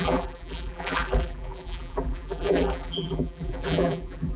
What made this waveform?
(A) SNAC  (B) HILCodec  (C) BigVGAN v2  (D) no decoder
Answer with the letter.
C